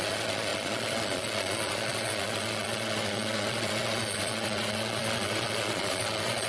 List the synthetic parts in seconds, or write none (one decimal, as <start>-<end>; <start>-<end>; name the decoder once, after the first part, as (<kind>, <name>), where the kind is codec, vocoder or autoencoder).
0.0-6.5 (vocoder, Vocos)